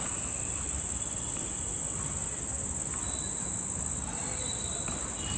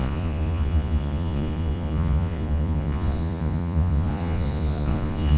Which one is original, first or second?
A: first